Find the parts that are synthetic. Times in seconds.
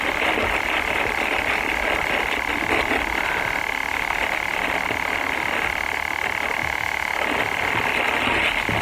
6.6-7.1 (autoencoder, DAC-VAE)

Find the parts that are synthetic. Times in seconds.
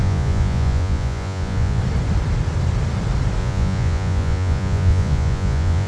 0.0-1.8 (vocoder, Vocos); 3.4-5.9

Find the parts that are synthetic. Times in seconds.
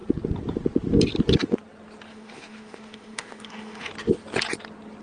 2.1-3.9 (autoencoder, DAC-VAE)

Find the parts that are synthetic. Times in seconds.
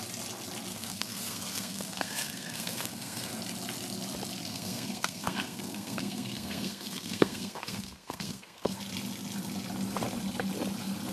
0.7-3.3 (codec, SNAC); 4.5-8.8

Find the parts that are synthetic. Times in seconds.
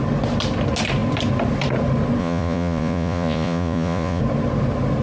2.2-4.2 (vocoder, Vocos)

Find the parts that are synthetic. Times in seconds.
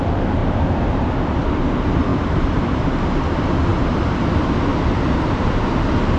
0.4-1.1 (vocoder, BigVGAN v2); 2.1-3.2; 3.7-4.2; 4.7-5.6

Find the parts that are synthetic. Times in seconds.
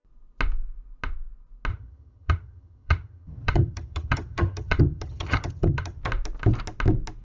1.7-6.0 (vocoder, HiFi-GAN)